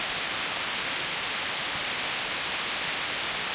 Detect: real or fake real